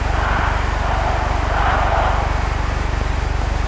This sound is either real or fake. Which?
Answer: real